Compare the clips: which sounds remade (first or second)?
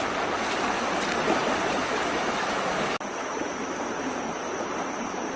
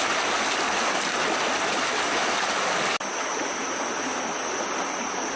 first